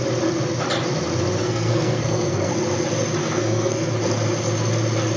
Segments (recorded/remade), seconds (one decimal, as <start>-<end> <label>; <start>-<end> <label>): 0.0-1.4 recorded; 1.4-2.5 remade; 2.5-3.2 recorded; 3.2-3.9 remade; 3.9-5.2 recorded